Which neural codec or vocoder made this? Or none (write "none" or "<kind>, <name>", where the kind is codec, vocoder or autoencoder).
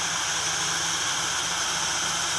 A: none